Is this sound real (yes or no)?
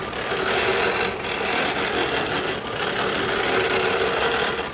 yes